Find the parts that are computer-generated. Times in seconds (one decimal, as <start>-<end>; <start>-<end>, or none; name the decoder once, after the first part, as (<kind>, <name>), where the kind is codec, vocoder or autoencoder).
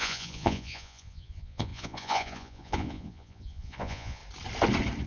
0.0-4.2 (vocoder, Vocos)